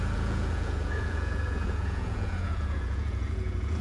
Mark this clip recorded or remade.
remade